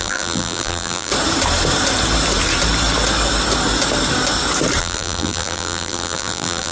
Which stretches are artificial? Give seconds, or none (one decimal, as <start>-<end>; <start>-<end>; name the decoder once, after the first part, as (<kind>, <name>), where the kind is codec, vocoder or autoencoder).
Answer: 0.0-1.1 (vocoder, BigVGAN v2); 4.8-6.7